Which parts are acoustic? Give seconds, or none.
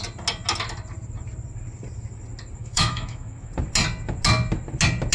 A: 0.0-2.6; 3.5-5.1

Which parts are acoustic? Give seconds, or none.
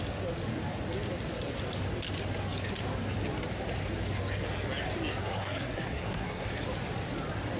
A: 0.0-5.2; 6.5-7.6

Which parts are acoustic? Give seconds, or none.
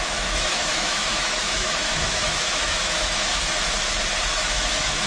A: 3.3-4.3